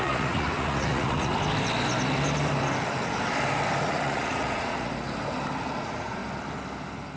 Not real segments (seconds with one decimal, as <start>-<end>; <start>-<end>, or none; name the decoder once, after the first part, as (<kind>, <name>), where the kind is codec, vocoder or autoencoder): 0.0-1.3 (vocoder, Vocos); 3.8-4.9; 5.6-6.2